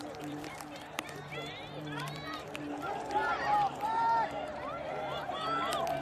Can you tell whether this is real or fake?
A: fake